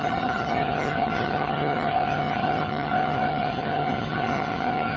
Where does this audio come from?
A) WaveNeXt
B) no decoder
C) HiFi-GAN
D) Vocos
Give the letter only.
C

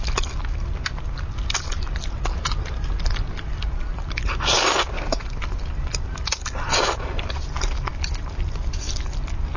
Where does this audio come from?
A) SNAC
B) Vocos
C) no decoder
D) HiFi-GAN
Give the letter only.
C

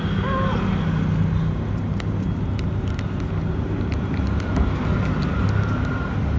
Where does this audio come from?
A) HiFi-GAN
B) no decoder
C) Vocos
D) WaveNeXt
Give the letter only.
B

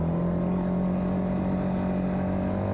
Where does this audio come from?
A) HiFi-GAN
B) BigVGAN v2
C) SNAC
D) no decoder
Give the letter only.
D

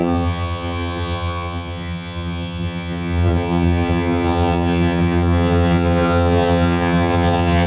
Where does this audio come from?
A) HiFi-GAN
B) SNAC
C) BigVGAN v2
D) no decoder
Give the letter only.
A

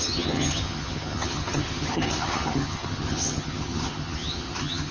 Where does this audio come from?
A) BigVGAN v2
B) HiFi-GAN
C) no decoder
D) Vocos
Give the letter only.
B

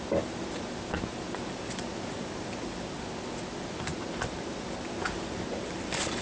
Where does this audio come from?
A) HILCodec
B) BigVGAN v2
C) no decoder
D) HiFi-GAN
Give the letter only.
C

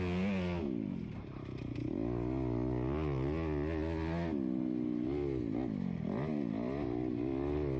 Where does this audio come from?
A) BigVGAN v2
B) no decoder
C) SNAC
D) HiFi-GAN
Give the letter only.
B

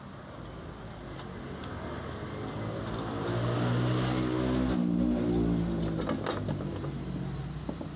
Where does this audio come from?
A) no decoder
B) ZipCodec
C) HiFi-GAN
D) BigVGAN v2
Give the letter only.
A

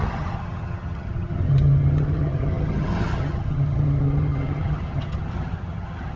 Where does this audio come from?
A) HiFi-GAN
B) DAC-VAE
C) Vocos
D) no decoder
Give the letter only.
A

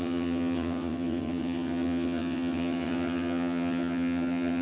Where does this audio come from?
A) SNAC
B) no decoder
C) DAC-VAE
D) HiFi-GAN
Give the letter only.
D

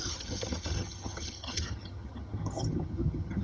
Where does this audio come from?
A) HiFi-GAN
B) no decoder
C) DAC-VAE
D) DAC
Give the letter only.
A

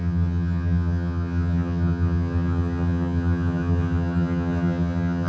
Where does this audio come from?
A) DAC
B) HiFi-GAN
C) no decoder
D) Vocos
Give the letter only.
B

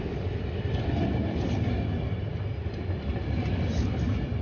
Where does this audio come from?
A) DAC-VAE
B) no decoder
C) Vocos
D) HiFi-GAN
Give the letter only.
B